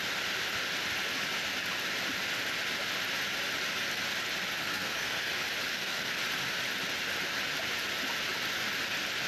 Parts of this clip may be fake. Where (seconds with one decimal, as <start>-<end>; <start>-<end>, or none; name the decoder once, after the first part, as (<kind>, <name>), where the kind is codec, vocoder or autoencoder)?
4.6-5.3 (codec, SNAC); 5.7-6.2